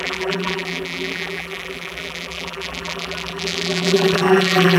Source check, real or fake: fake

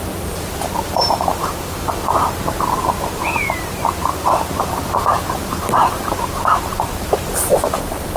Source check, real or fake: fake